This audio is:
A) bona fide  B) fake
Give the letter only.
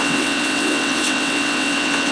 B